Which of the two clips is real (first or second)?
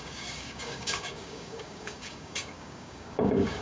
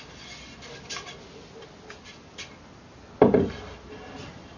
second